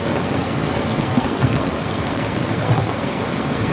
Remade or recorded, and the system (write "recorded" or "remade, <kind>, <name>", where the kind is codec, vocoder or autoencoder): remade, codec, SNAC